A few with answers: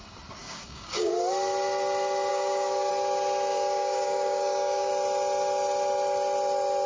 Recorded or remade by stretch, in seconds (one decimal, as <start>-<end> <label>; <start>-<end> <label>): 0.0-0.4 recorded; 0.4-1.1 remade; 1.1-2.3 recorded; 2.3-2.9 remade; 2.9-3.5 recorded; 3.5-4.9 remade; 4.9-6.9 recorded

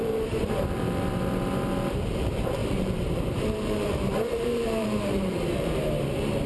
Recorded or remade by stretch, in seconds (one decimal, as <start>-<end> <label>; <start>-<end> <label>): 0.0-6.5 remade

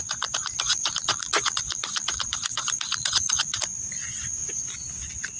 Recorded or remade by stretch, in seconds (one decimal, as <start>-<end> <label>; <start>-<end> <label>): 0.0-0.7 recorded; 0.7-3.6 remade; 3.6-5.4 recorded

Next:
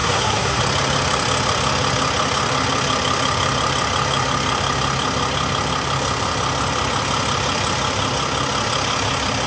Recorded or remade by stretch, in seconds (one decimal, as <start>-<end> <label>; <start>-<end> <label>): 0.0-0.6 remade; 0.6-9.5 recorded